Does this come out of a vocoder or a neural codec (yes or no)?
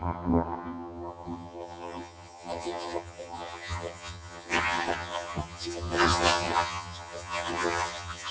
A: yes